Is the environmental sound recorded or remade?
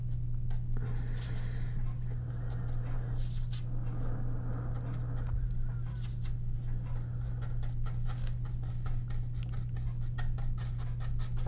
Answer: recorded